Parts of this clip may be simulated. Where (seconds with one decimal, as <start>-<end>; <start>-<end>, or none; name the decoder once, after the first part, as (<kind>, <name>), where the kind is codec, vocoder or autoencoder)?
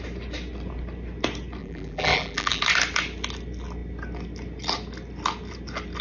1.6-2.6 (vocoder, BigVGAN v2)